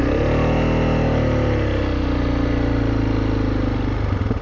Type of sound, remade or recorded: recorded